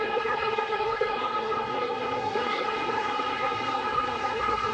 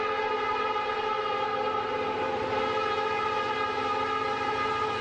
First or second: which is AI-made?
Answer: first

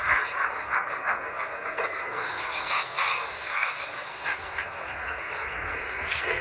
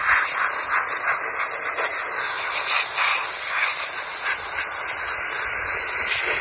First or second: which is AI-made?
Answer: first